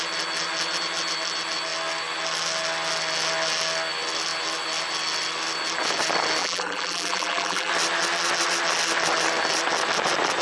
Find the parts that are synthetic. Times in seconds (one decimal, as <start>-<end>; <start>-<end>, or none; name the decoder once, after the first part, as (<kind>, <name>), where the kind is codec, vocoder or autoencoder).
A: 6.4-7.7 (vocoder, BigVGAN v2)